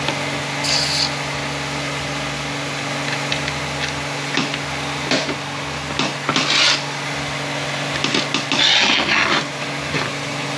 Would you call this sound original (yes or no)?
yes